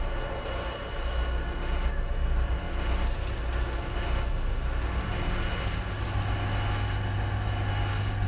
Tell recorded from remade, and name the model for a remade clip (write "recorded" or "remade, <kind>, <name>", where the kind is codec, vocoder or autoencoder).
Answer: recorded